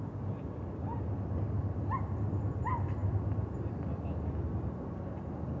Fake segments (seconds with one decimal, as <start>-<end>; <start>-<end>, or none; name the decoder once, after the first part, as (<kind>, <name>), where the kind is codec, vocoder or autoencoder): none